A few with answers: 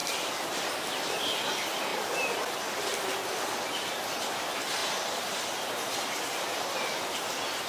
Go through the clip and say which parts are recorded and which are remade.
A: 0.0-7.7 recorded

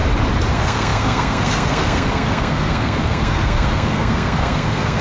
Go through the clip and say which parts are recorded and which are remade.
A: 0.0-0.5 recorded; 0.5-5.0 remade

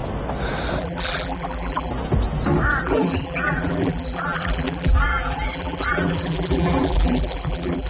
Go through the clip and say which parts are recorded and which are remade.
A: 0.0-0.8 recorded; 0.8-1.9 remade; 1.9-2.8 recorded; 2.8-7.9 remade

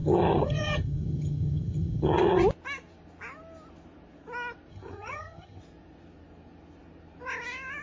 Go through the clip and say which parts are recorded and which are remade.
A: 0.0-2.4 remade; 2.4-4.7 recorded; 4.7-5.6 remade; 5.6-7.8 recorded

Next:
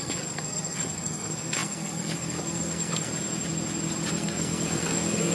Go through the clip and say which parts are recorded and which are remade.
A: 0.0-3.1 remade; 3.1-4.1 recorded; 4.1-5.3 remade

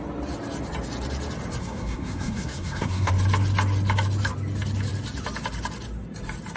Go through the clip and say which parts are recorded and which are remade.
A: 0.0-1.6 recorded; 1.6-3.1 remade; 3.1-6.6 recorded